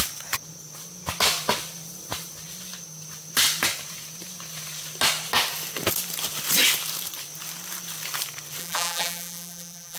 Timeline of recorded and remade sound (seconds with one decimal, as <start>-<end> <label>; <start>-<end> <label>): 0.0-8.6 recorded; 8.6-10.0 remade